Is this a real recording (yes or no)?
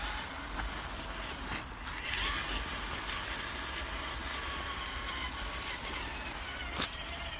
yes